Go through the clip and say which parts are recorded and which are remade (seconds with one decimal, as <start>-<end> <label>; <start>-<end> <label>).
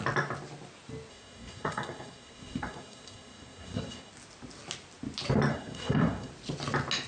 0.0-1.1 recorded; 1.1-4.1 remade; 4.1-5.5 recorded; 5.5-6.3 remade; 6.3-7.1 recorded